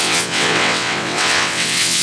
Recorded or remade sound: remade